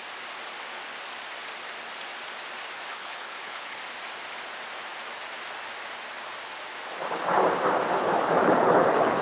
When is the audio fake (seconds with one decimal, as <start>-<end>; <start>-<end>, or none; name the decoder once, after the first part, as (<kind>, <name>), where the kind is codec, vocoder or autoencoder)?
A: 2.9-3.8 (codec, HILCodec); 8.4-9.2